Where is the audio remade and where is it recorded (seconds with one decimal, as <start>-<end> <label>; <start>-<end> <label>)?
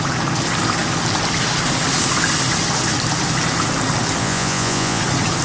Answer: 0.0-4.2 recorded; 4.2-5.0 remade; 5.0-5.4 recorded